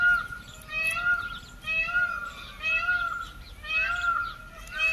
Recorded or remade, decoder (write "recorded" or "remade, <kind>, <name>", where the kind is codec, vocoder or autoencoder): recorded